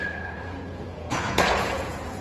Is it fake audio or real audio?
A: fake